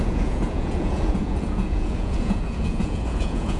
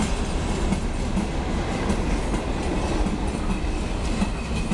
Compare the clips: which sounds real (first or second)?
second